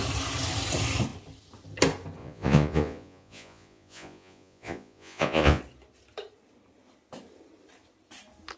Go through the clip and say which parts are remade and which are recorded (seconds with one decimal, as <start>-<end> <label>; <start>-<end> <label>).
0.0-2.2 recorded; 2.2-5.6 remade; 5.6-8.6 recorded